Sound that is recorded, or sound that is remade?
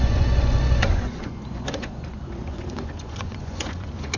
remade